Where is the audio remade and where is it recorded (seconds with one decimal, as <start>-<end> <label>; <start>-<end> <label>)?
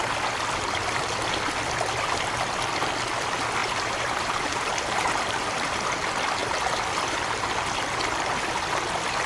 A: 0.0-3.6 recorded; 3.6-5.7 remade; 5.7-9.3 recorded